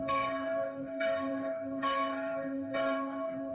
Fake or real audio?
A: fake